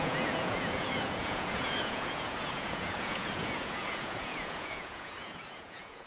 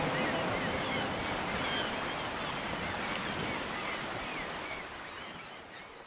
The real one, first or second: second